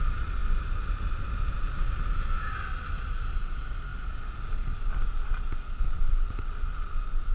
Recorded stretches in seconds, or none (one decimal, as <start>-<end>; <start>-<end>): 0.0-7.3